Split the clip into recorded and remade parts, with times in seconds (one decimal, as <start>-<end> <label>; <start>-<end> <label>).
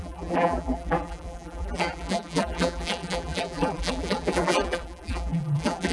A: 0.0-5.9 remade